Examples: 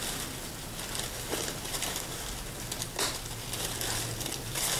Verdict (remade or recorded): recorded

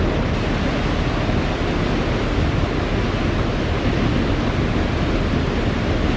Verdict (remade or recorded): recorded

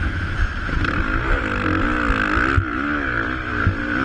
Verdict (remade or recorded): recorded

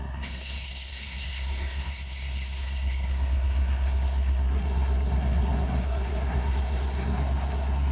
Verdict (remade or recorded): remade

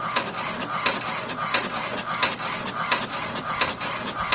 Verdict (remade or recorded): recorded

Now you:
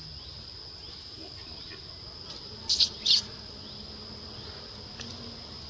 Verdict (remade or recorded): recorded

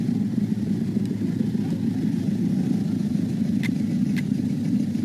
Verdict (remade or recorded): remade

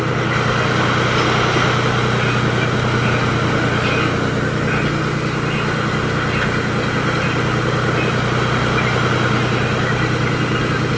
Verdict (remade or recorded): recorded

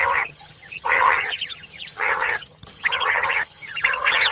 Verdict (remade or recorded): remade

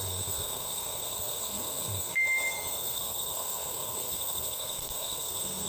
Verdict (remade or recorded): remade